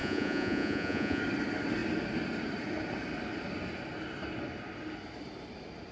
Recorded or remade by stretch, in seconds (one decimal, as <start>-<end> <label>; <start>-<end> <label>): 0.0-1.2 remade; 1.2-5.9 recorded